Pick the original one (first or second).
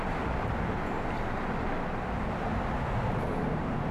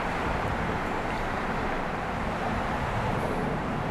first